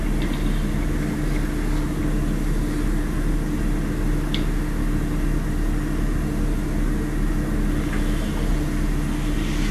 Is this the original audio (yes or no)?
yes